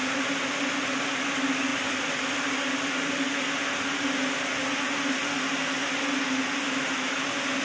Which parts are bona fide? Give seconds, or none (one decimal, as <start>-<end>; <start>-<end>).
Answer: 0.0-1.7; 3.2-7.6